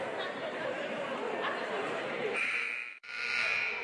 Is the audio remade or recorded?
remade